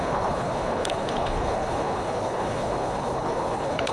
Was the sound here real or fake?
fake